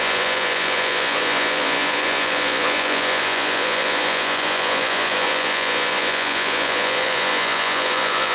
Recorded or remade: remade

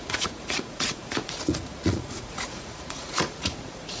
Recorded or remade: remade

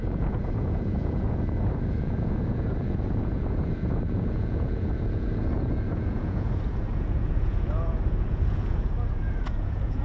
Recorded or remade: remade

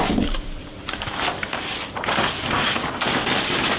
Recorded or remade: recorded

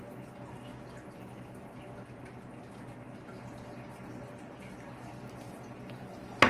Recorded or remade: recorded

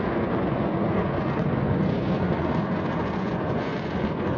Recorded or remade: remade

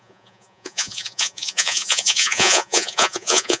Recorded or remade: remade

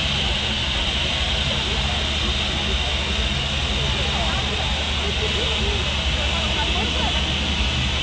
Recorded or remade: recorded